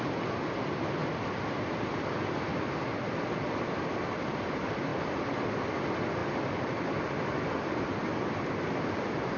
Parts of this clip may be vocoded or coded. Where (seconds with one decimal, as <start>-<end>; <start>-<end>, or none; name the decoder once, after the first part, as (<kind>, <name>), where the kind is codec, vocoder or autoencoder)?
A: none